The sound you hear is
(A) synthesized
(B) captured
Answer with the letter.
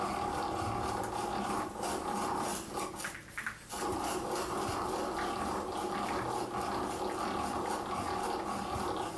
B